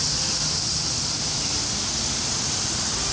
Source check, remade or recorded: recorded